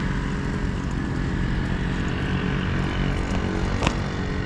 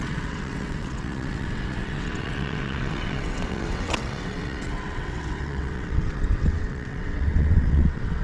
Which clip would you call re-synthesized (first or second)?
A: second